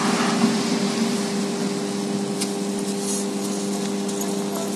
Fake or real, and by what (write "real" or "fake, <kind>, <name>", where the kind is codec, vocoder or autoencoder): real